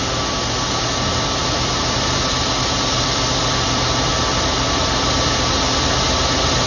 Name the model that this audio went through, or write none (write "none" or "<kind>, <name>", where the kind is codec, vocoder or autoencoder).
none